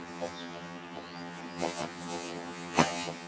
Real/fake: fake